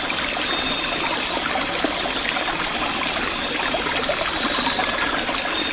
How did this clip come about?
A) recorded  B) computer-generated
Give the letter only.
A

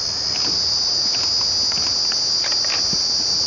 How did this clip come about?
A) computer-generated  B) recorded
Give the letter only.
B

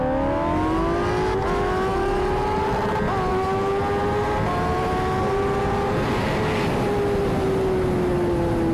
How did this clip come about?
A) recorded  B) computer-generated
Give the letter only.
A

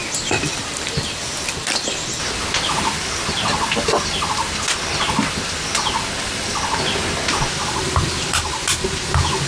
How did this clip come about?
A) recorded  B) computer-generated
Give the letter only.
A